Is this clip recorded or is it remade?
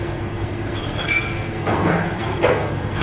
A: remade